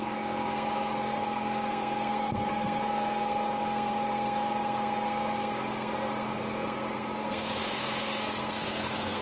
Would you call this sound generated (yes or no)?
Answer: yes